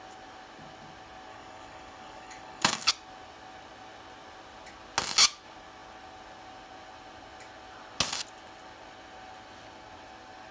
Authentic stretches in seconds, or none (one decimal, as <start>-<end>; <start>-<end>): 0.0-1.3; 2.9-10.5

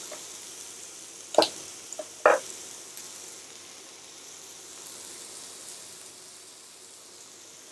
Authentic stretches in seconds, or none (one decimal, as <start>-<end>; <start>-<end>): 0.0-7.7

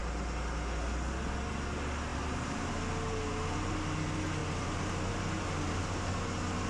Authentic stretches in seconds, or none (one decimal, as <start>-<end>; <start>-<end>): 0.0-2.1; 2.7-6.7